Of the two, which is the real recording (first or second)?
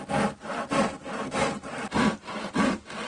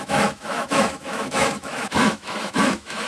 first